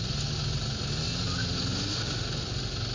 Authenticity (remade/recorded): recorded